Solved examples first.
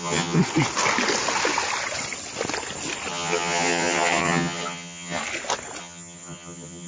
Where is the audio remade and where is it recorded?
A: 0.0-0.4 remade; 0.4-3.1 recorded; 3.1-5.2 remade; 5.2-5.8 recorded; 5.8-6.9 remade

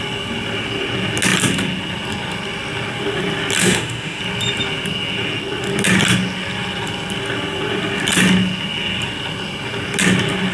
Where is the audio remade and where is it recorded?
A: 0.0-3.6 recorded; 3.6-4.2 remade; 4.2-10.5 recorded

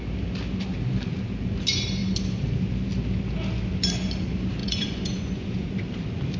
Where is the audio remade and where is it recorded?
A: 0.0-4.6 recorded; 4.6-5.7 remade; 5.7-6.4 recorded

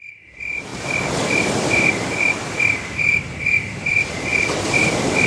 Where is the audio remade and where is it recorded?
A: 0.0-4.3 recorded; 4.3-5.3 remade

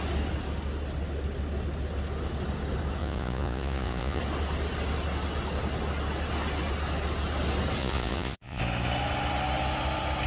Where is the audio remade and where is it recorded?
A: 0.0-3.0 recorded; 3.0-4.2 remade; 4.2-7.8 recorded; 7.8-8.6 remade; 8.6-10.3 recorded